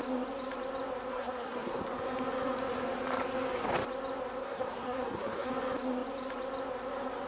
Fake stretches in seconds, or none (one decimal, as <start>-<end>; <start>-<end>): 1.1-1.8; 4.4-5.5